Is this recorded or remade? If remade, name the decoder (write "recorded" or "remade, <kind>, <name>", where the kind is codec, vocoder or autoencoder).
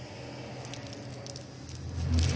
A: recorded